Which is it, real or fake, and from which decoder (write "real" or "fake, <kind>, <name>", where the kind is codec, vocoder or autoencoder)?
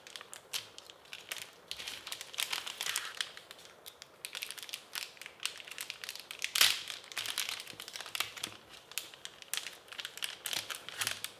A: real